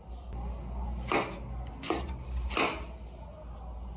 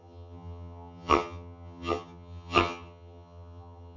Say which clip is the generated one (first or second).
second